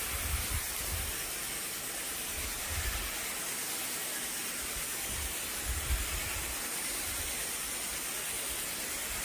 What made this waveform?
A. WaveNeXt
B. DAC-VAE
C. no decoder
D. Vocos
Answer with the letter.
C